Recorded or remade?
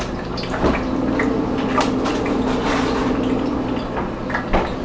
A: recorded